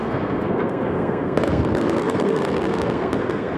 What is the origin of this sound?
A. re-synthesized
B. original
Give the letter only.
A